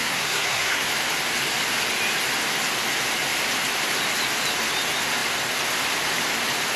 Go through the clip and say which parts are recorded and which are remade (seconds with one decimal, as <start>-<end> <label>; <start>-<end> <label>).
0.0-0.9 remade; 0.9-6.8 recorded